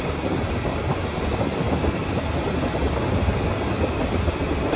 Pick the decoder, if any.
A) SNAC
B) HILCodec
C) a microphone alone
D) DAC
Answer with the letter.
C